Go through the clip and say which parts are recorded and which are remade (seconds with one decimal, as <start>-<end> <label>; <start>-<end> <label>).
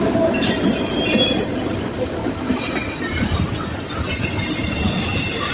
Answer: 0.0-2.2 remade; 2.2-5.5 recorded